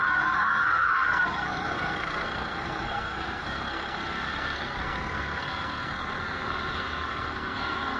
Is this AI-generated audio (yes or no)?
yes